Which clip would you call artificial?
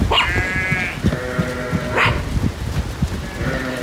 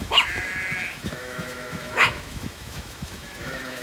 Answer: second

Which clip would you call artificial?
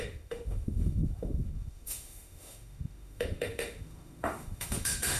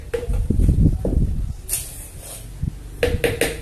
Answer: first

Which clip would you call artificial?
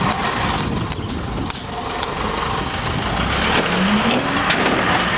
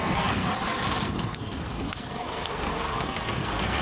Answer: second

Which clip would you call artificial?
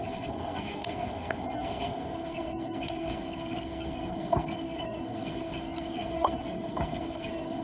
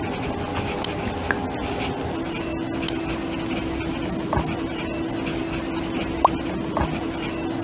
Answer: first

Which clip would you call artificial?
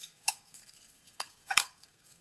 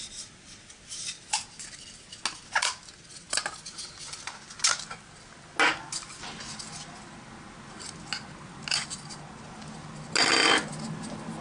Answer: first